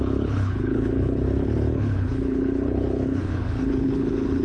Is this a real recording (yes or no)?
no